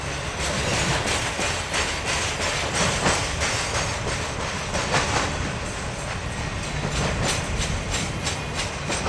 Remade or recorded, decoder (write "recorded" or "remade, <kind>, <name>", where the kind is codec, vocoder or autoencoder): recorded